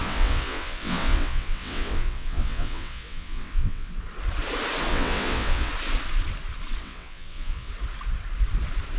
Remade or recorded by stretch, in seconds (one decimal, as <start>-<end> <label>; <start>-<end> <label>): 0.0-3.9 remade; 3.9-4.9 recorded; 4.9-5.7 remade; 5.7-6.8 recorded; 6.8-7.7 remade; 7.7-9.0 recorded